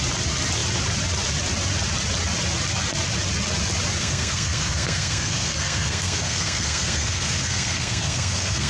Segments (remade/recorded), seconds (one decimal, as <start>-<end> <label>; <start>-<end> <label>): 0.0-4.0 recorded; 4.0-8.7 remade